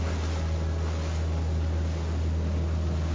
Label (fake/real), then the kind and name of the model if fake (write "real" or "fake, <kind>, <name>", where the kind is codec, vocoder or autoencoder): real